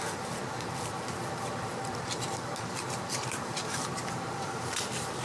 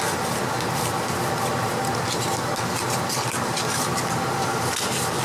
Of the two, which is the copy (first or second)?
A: first